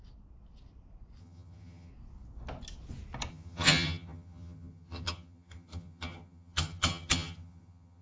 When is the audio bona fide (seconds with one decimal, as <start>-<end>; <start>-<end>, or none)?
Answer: 0.0-1.2; 1.9-3.3